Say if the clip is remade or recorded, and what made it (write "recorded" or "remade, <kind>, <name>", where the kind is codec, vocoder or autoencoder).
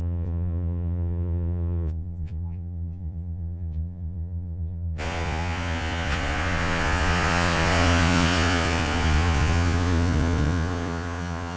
remade, vocoder, Vocos